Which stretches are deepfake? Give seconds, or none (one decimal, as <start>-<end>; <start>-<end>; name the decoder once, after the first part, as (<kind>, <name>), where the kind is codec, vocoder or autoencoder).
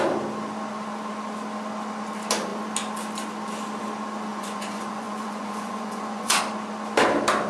4.3-6.4 (vocoder, Vocos)